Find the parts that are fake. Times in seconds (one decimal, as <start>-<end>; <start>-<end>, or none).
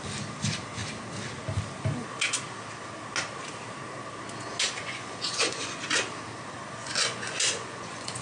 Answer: 4.8-5.8; 6.8-8.2